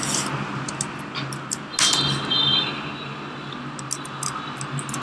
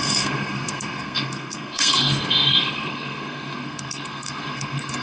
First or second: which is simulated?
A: second